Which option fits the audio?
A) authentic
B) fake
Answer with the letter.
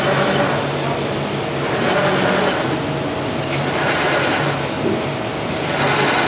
A